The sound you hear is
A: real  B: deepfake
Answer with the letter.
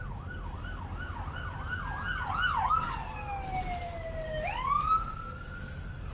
A